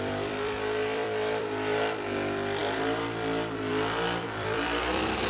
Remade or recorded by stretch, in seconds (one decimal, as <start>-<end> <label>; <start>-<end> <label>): 0.0-5.3 remade